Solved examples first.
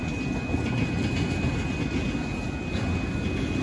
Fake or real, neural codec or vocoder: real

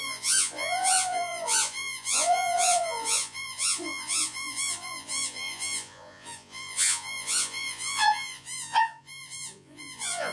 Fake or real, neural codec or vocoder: fake, vocoder, Vocos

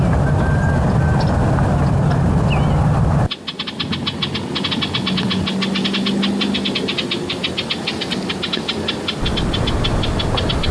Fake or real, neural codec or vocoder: real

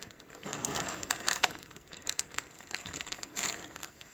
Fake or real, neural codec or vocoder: fake, codec, SNAC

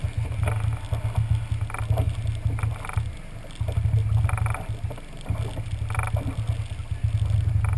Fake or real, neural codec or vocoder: real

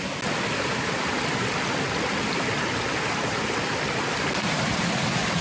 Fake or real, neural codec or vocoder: real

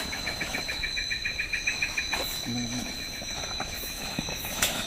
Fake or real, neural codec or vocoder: fake, autoencoder, DAC-VAE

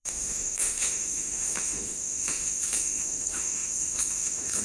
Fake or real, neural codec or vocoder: fake, autoencoder, DAC-VAE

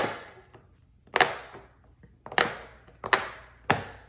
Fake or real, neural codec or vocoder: real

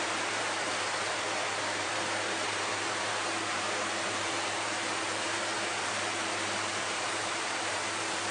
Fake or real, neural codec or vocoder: fake, vocoder, BigVGAN v2